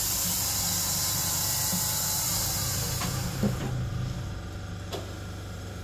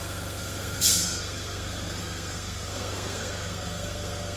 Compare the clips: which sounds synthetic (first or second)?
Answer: second